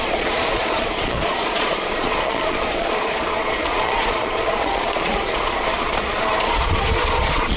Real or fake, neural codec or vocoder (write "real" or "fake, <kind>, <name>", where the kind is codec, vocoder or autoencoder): fake, vocoder, Vocos